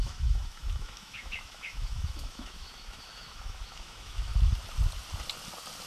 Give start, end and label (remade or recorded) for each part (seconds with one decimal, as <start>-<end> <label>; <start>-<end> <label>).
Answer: 0.0-4.3 remade; 4.3-5.9 recorded